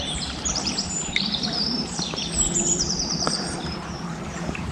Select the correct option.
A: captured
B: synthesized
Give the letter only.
B